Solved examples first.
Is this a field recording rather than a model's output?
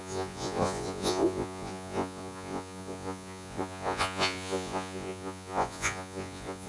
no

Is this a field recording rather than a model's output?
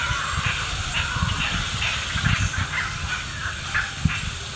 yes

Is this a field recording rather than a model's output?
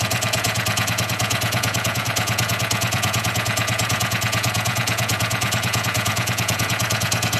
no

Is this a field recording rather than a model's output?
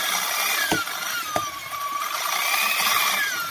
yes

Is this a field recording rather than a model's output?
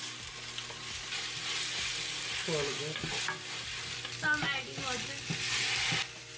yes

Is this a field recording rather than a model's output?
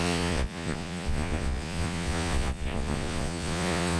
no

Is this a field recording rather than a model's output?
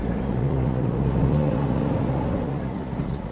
no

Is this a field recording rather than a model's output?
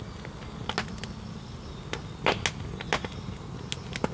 yes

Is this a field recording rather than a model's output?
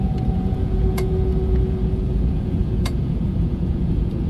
no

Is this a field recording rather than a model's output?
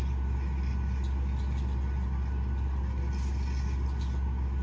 yes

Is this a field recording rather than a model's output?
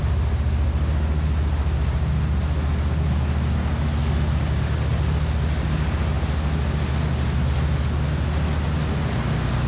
yes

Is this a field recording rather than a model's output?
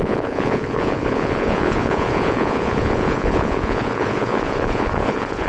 no